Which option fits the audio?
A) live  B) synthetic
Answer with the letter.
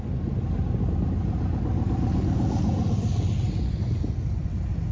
A